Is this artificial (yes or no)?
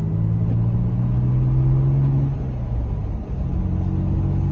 no